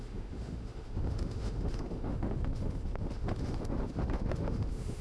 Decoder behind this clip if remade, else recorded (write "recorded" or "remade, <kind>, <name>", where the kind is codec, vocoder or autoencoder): remade, autoencoder, DAC-VAE